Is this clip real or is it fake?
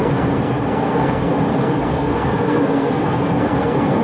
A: fake